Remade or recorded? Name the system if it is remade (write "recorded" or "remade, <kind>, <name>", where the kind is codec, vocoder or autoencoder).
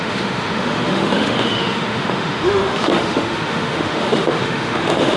remade, autoencoder, DAC-VAE